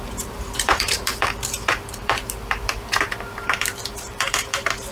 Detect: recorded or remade remade